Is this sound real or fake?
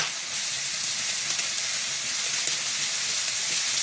real